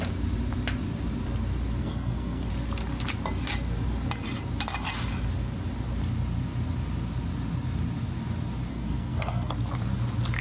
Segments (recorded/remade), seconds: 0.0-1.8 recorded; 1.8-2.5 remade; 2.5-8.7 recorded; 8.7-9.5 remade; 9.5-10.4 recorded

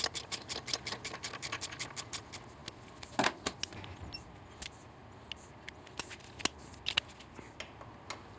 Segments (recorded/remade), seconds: 0.0-8.4 recorded

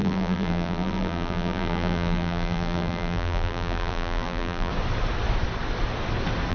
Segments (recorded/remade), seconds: 0.0-4.7 remade; 4.7-6.5 recorded

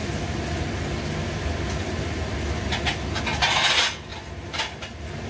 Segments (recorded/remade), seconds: 0.0-5.3 recorded

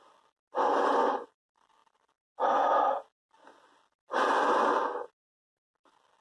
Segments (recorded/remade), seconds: 0.0-6.2 recorded

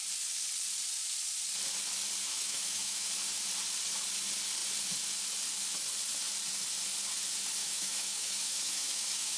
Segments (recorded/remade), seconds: 0.0-2.3 recorded; 2.3-3.1 remade; 3.1-7.6 recorded; 7.6-9.4 remade

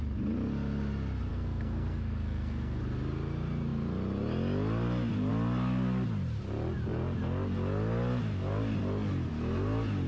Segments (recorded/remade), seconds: 0.0-1.3 recorded; 1.3-2.8 remade; 2.8-10.1 recorded

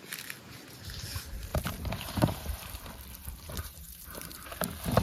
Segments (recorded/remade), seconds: 0.0-1.5 recorded; 1.5-2.6 remade; 2.6-3.2 recorded; 3.2-4.5 remade; 4.5-5.0 recorded